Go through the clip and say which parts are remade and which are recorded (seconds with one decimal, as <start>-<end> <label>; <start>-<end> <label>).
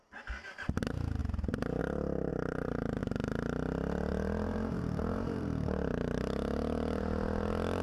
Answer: 0.0-2.3 recorded; 2.3-3.0 remade; 3.0-4.1 recorded; 4.1-6.2 remade; 6.2-7.8 recorded